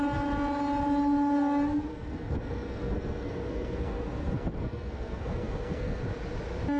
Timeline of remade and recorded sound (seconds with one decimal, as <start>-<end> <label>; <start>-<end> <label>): 0.0-1.9 recorded; 1.9-6.0 remade; 6.0-6.8 recorded